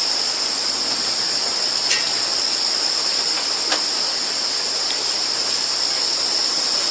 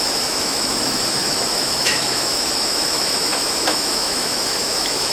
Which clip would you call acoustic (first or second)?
first